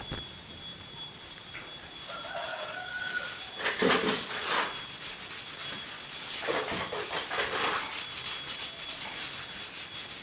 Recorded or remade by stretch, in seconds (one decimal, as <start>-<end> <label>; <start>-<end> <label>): 0.0-2.5 recorded; 2.5-3.2 remade; 3.2-10.2 recorded